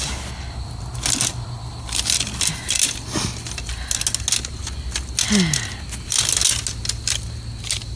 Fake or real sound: real